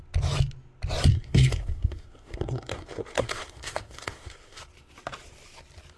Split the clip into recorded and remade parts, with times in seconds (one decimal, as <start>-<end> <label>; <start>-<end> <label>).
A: 0.0-1.1 recorded; 1.1-4.6 remade; 4.6-6.0 recorded